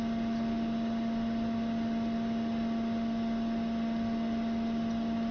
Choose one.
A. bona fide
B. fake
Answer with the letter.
A